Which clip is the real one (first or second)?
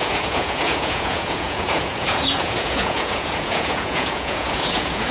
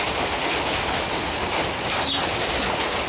second